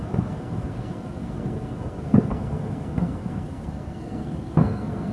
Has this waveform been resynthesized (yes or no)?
yes